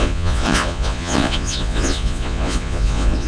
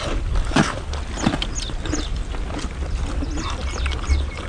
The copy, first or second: first